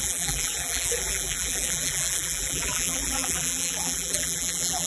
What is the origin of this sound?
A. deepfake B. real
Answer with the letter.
A